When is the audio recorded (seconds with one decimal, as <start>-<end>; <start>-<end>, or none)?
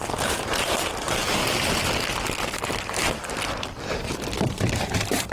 1.4-4.6